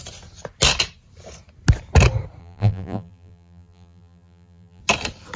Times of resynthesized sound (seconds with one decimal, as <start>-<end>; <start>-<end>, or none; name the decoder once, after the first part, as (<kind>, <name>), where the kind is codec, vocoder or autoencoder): 2.4-4.8 (vocoder, BigVGAN v2)